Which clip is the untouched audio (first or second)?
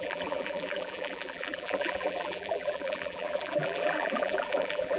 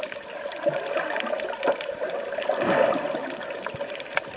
second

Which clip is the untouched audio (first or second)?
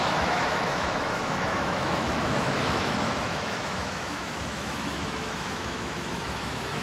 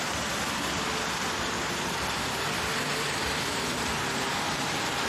second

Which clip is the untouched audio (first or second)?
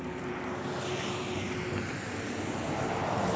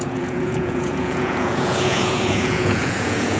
first